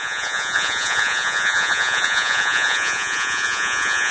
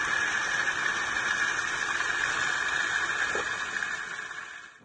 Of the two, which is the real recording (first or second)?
second